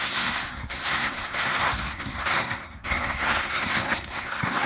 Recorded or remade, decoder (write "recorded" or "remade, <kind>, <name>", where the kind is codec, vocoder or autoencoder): remade, codec, SNAC